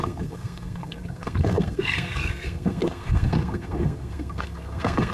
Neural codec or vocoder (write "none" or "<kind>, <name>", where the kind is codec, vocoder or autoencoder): codec, SNAC